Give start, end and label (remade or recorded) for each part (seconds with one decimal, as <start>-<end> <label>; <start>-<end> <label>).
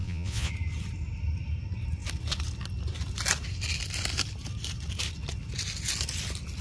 0.0-0.5 remade; 0.5-6.6 recorded